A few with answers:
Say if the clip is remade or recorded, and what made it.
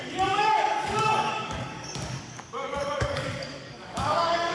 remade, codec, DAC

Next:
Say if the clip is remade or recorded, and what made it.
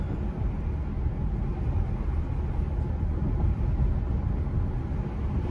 recorded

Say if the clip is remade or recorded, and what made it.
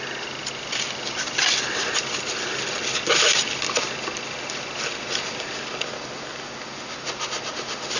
recorded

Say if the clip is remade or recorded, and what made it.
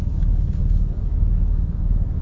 remade, codec, DAC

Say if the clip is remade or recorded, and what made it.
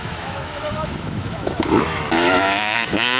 remade, autoencoder, DAC-VAE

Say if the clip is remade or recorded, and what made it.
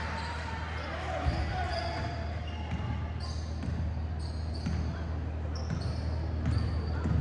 recorded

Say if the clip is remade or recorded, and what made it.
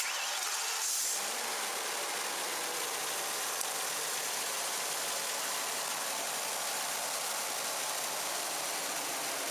recorded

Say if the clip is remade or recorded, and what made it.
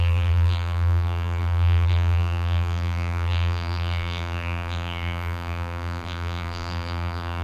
remade, vocoder, BigVGAN v2